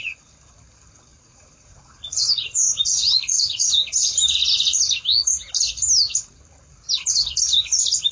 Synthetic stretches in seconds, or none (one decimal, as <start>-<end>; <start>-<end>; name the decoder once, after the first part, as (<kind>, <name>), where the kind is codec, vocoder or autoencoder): 1.1-3.7 (vocoder, Vocos)